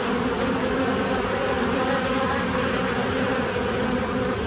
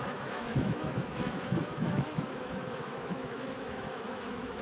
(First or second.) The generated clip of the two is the second